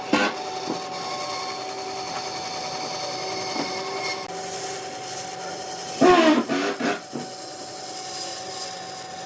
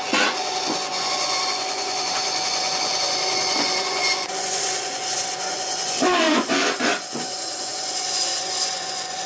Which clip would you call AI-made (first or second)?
second